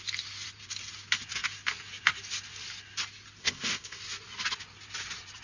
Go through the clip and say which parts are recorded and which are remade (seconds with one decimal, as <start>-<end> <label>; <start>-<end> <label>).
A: 0.0-3.4 recorded; 3.4-4.0 remade; 4.0-5.4 recorded